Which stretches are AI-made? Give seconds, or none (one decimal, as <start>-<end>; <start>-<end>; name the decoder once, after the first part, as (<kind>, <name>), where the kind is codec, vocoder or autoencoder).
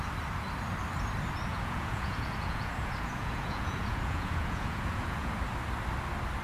1.5-5.3 (vocoder, Vocos)